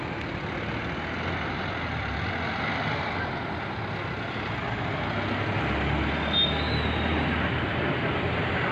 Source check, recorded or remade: recorded